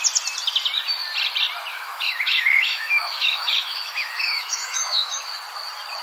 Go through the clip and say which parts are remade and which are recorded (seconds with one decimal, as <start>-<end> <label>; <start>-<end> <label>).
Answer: 0.0-1.7 recorded; 1.7-5.3 remade; 5.3-6.0 recorded